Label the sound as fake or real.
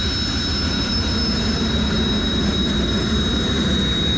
real